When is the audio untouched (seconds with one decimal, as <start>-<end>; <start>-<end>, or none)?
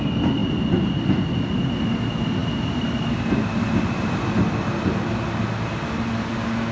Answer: 0.0-2.4; 4.8-6.7